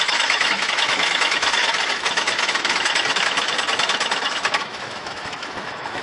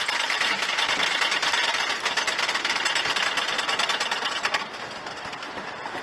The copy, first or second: first